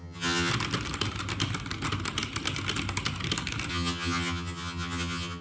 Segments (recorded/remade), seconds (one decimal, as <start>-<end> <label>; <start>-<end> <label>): 0.0-0.5 remade; 0.5-3.7 recorded; 3.7-5.4 remade